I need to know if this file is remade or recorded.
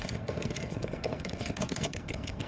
remade